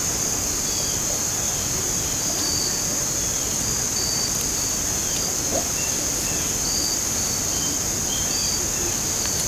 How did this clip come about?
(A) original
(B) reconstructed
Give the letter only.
A